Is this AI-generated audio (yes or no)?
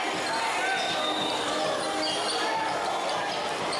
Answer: no